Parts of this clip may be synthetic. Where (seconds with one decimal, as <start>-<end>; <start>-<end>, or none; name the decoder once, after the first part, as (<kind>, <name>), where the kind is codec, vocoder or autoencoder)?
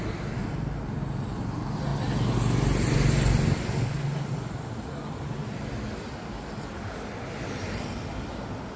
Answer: none